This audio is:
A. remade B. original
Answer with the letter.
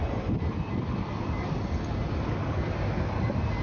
B